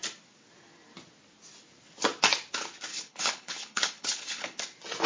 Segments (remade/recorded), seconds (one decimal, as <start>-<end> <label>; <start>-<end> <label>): 0.0-2.9 recorded; 2.9-4.6 remade; 4.6-5.1 recorded